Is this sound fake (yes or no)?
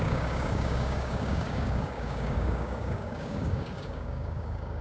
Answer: yes